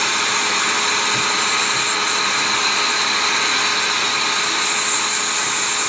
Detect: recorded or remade recorded